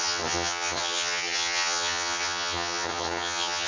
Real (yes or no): no